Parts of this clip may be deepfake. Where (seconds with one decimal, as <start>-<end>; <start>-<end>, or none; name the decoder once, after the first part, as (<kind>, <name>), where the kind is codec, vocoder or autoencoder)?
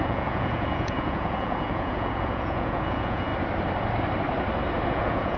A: 0.0-3.3 (vocoder, Vocos); 4.9-5.4